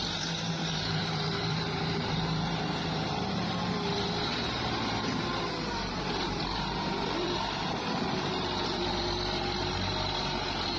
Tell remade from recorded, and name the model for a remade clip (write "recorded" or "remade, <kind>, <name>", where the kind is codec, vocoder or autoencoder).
remade, vocoder, BigVGAN v2